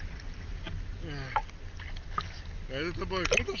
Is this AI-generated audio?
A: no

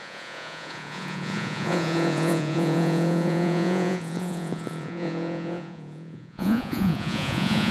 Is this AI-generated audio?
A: yes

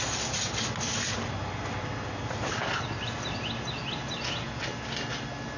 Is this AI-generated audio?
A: no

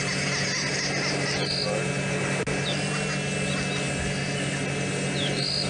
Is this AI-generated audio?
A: no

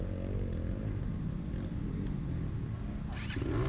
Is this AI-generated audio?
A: no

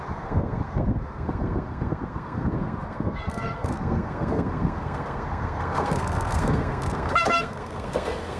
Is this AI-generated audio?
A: yes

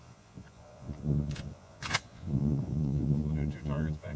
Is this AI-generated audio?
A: yes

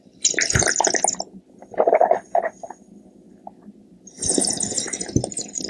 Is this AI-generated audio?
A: no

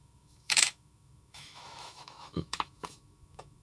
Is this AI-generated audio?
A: yes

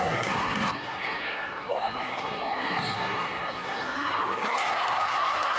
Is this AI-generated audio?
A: yes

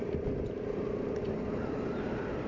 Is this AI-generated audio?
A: no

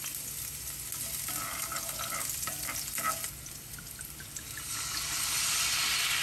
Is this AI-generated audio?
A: no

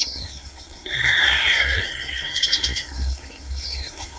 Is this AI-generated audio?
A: yes